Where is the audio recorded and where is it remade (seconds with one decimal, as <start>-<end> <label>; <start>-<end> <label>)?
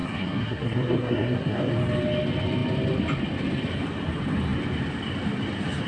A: 0.0-1.7 remade; 1.7-5.9 recorded